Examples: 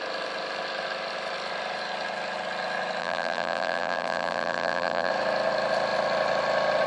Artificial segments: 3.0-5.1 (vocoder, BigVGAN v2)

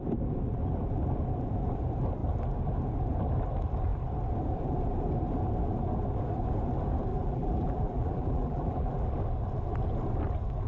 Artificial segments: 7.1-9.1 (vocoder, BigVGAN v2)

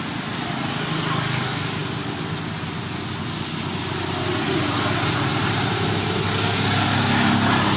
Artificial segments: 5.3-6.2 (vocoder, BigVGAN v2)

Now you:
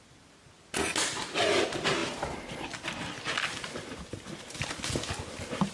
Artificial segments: none

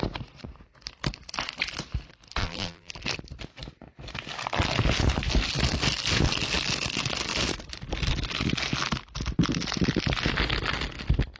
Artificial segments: 2.4-2.9 (vocoder, BigVGAN v2)

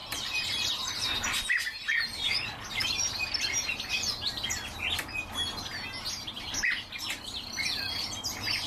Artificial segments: 0.0-0.7 (vocoder, BigVGAN v2)

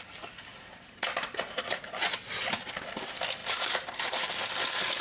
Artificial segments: 0.5-1.4 (vocoder, BigVGAN v2); 3.4-4.5

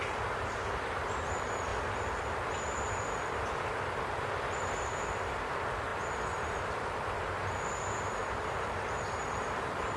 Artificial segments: 0.0-1.7 (vocoder, BigVGAN v2); 4.2-10.0